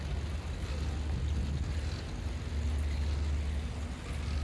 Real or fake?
real